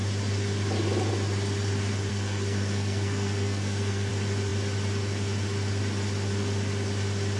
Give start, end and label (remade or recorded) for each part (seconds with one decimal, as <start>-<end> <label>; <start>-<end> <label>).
0.0-2.1 recorded; 2.1-4.1 remade; 4.1-7.4 recorded